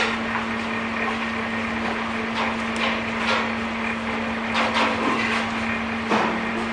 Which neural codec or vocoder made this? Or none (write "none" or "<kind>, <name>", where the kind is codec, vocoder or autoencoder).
none